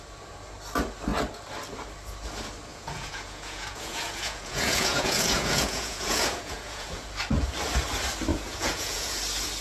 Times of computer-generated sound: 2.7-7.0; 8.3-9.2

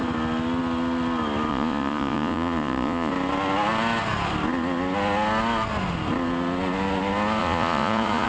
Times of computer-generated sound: 1.5-3.1; 7.4-8.3

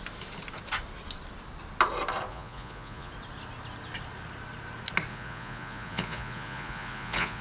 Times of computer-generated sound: 2.3-3.1; 5.1-7.4

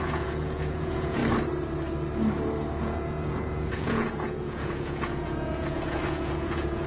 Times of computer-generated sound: 0.0-1.2; 2.8-6.9

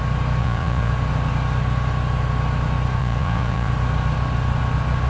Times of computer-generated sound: 0.4-0.9; 3.0-3.7

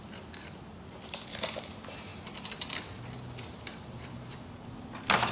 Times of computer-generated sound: none

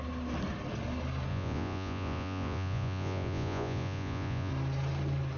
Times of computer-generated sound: 1.3-4.5